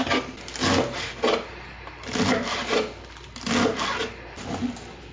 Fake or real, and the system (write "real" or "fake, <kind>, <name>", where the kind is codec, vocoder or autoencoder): real